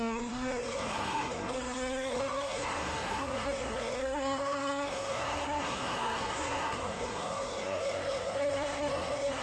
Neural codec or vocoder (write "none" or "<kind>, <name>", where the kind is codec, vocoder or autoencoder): codec, SNAC